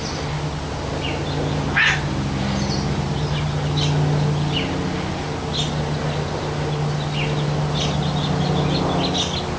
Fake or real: real